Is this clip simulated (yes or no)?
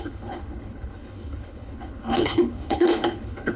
yes